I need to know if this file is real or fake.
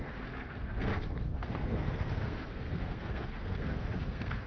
fake